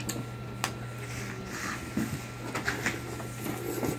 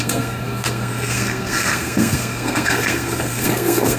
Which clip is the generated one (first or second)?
second